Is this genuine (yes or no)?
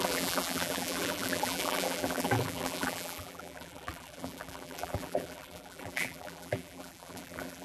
no